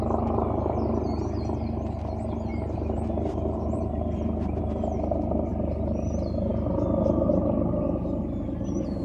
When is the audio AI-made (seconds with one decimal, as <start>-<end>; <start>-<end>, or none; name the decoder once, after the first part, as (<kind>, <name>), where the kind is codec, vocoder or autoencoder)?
2.5-4.6 (vocoder, BigVGAN v2)